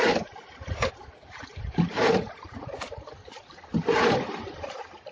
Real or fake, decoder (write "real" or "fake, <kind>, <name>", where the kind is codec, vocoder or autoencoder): fake, vocoder, BigVGAN v2